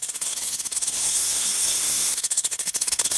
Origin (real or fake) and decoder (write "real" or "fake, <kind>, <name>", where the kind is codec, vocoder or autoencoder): fake, codec, SNAC